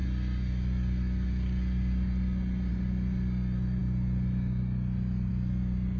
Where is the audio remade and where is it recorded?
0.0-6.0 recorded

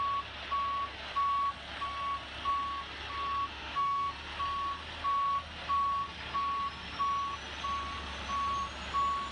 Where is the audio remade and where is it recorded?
0.0-3.5 recorded; 3.5-4.1 remade; 4.1-9.3 recorded

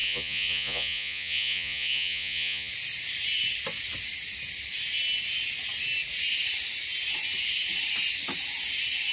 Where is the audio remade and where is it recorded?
0.0-2.7 remade; 2.7-9.1 recorded

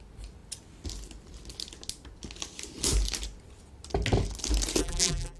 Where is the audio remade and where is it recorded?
0.0-4.8 recorded; 4.8-5.4 remade